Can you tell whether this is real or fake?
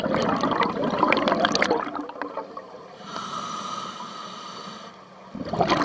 real